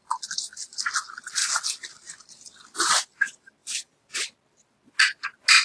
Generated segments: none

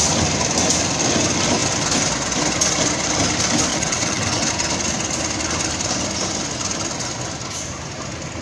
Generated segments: 3.7-4.5 (vocoder, WaveNeXt)

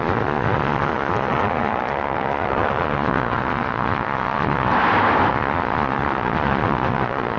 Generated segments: 0.0-4.7 (vocoder, Vocos); 5.3-7.4

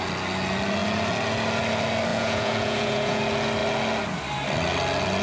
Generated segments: 2.1-3.2 (vocoder, Vocos)

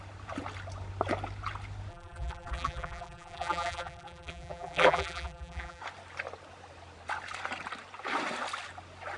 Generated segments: 1.9-5.8 (vocoder, BigVGAN v2)

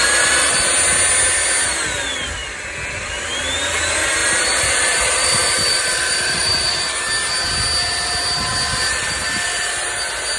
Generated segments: 4.2-6.7 (vocoder, BigVGAN v2)